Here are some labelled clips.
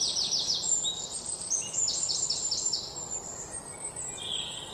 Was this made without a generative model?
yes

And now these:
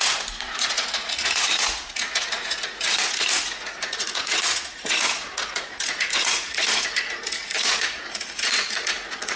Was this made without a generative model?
no